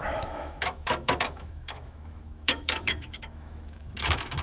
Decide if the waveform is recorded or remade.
remade